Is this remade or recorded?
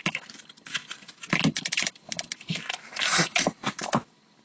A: recorded